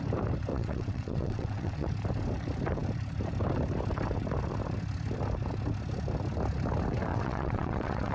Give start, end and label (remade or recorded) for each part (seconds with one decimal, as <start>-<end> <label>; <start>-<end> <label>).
0.0-0.5 recorded; 0.5-1.9 remade; 1.9-7.1 recorded; 7.1-8.1 remade

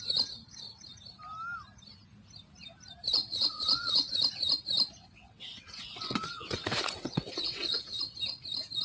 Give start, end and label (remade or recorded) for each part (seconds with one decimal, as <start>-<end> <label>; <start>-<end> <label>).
0.0-3.2 recorded; 3.2-4.1 remade; 4.1-5.0 recorded; 5.0-8.0 remade; 8.0-8.8 recorded

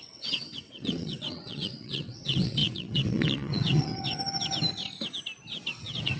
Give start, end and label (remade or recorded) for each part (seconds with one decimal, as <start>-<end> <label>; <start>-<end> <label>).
0.0-3.9 remade; 3.9-5.7 recorded; 5.7-6.2 remade

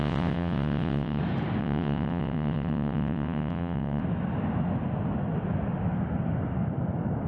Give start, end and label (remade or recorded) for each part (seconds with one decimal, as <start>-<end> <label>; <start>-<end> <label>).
0.0-1.2 remade; 1.2-1.6 recorded; 1.6-4.0 remade; 4.0-7.3 recorded

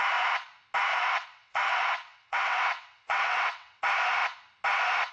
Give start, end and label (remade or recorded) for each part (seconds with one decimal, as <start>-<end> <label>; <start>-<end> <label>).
0.0-0.9 recorded; 0.9-3.8 remade; 3.8-5.1 recorded

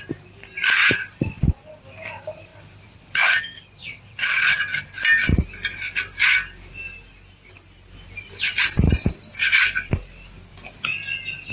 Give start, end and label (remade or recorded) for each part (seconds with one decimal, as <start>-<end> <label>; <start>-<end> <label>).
0.0-3.8 recorded; 3.8-4.6 remade; 4.6-11.5 recorded

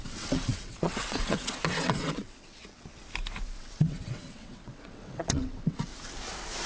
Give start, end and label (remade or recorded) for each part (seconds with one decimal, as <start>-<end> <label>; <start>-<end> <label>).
0.0-2.6 remade; 2.6-3.6 recorded; 3.6-5.9 remade; 5.9-6.7 recorded